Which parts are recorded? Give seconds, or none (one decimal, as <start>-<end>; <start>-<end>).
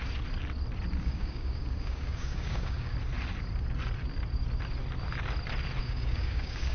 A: 0.0-1.0; 2.9-5.8